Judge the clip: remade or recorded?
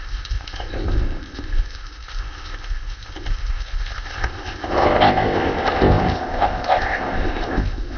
remade